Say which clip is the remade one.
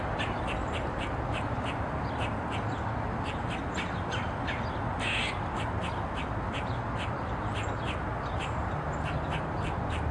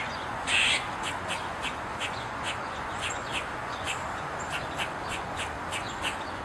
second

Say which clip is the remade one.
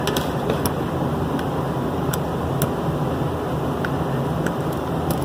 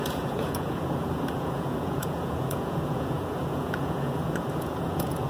second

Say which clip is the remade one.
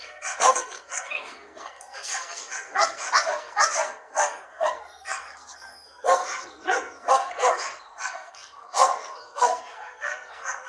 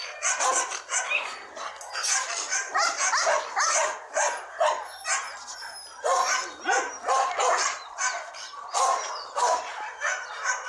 first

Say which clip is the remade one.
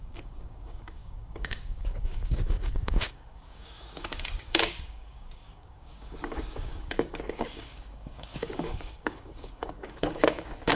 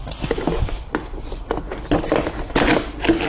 first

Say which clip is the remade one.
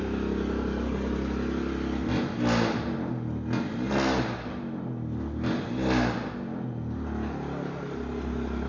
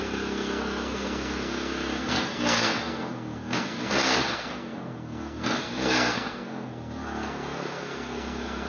second